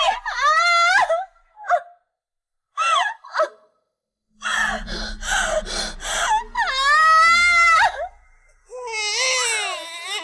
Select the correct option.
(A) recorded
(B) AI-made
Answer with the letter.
A